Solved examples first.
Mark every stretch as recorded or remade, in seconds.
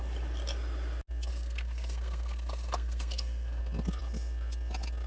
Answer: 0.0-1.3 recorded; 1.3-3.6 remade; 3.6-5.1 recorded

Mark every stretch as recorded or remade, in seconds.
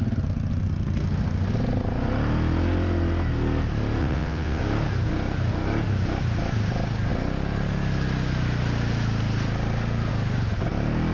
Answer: 0.0-4.0 recorded; 4.0-4.6 remade; 4.6-11.1 recorded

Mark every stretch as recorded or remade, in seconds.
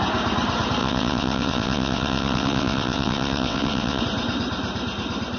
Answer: 0.0-0.8 recorded; 0.8-4.0 remade; 4.0-5.4 recorded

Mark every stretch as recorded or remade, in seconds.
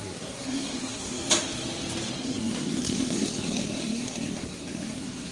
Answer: 0.0-1.2 remade; 1.2-2.2 recorded; 2.2-5.3 remade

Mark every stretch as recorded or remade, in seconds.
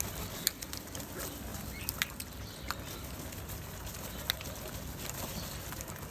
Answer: 0.0-6.1 recorded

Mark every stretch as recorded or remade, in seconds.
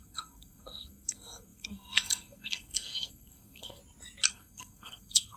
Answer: 0.0-3.8 remade; 3.8-4.3 recorded; 4.3-5.4 remade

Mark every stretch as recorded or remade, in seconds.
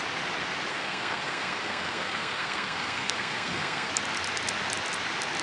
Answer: 0.0-0.7 recorded; 0.7-3.9 remade; 3.9-5.4 recorded